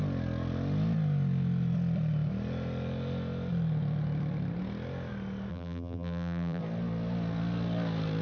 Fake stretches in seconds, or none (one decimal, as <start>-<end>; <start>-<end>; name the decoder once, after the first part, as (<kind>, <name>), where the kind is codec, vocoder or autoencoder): 5.5-6.6 (vocoder, BigVGAN v2)